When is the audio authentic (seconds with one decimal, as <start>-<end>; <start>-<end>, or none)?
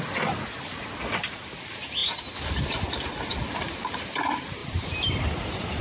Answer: 0.0-4.6